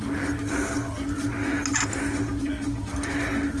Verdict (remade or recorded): recorded